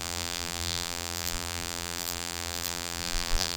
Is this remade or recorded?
remade